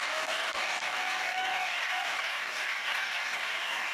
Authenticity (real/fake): fake